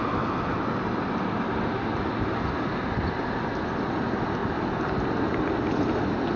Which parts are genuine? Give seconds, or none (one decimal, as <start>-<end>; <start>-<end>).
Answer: 0.0-0.5; 1.7-4.4; 6.0-6.4